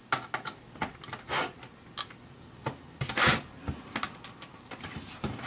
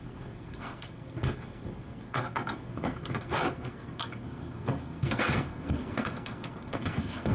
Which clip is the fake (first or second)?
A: second